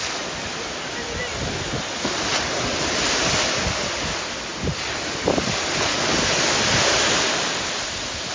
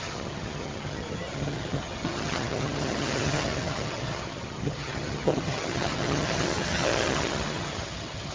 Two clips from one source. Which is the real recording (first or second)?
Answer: first